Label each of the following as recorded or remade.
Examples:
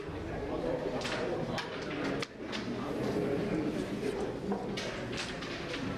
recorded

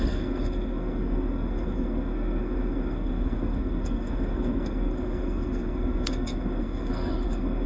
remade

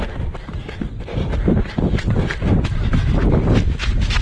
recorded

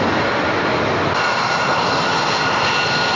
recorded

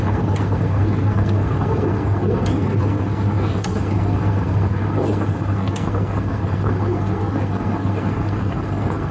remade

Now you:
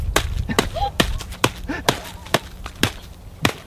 recorded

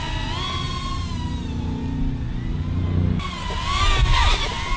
recorded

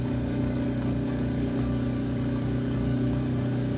remade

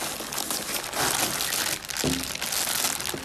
recorded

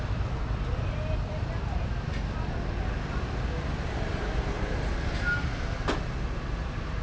recorded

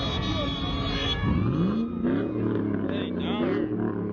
recorded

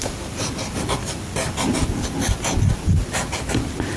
recorded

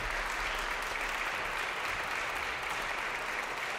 recorded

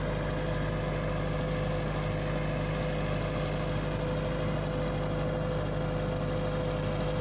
recorded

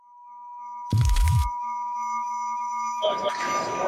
remade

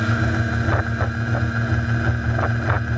recorded